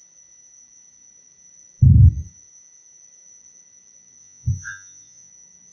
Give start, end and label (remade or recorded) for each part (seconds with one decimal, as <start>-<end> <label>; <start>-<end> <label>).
0.0-4.2 recorded; 4.2-5.3 remade; 5.3-5.7 recorded